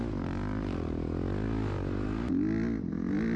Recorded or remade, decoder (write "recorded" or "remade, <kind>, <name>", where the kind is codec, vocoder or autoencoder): recorded